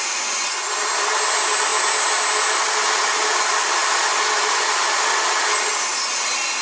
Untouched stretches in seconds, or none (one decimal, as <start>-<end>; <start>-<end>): 0.0-6.6